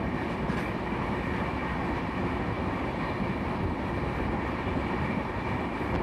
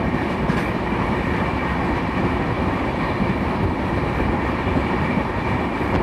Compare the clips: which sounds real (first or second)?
first